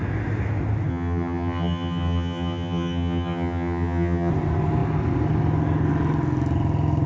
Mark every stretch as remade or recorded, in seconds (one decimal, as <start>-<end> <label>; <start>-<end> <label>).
0.0-0.9 recorded; 0.9-4.3 remade; 4.3-7.1 recorded